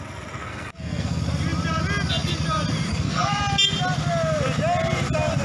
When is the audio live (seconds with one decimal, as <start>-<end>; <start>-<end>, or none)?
0.0-0.4; 1.2-2.9; 3.4-5.4